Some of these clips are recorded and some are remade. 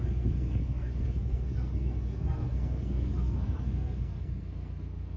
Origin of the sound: remade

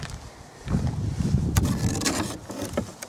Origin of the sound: recorded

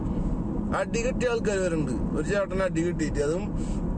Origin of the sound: recorded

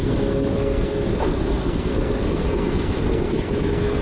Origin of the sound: remade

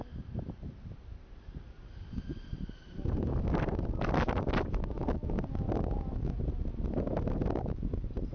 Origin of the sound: recorded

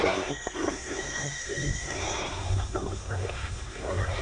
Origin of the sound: remade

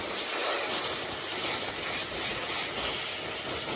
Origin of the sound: recorded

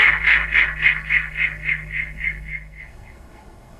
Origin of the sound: remade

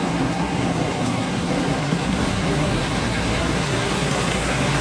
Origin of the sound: remade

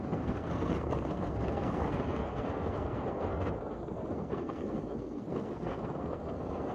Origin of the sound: remade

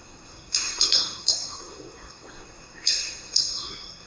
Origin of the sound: remade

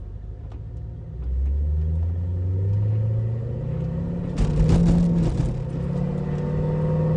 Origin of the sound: recorded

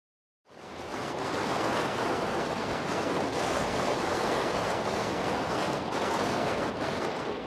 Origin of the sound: remade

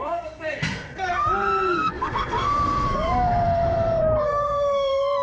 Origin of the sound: remade